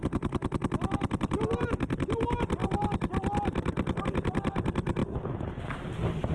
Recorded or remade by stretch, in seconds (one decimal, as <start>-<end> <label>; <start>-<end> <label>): 0.0-6.3 recorded